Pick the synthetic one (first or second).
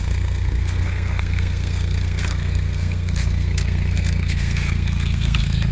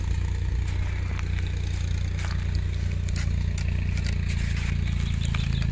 first